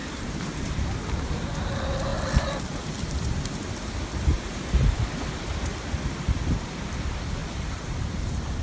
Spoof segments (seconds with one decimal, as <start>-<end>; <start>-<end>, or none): 0.0-1.7; 4.3-5.7; 7.4-8.6